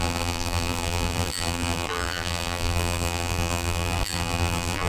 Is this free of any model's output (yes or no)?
no